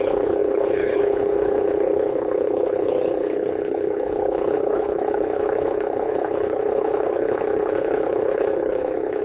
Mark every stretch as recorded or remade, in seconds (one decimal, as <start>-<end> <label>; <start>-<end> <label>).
0.0-9.2 remade